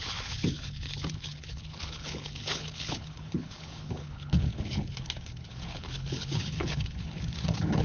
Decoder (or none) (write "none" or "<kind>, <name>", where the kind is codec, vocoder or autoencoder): codec, HILCodec